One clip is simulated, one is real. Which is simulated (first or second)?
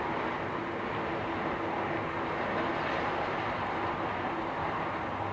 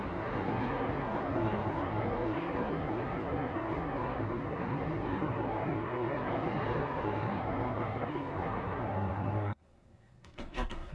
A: second